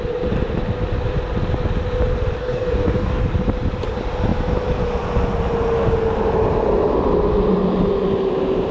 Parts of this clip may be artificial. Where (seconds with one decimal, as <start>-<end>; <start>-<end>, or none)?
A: 2.4-3.2